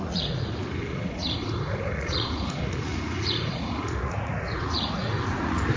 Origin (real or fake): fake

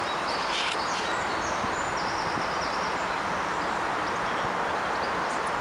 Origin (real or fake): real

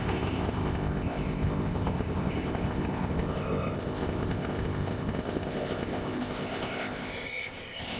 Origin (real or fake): fake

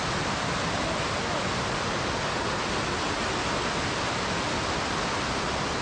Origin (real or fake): real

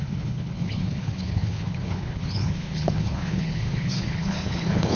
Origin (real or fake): fake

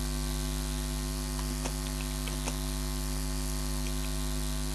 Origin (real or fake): real